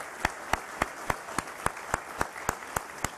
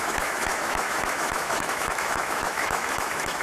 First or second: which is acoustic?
first